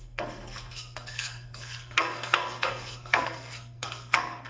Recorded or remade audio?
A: remade